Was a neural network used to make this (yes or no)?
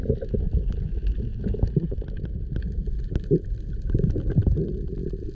no